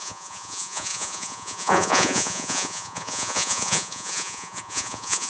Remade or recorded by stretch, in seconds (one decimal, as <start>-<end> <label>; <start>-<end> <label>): 0.0-5.3 remade